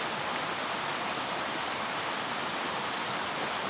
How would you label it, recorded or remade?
recorded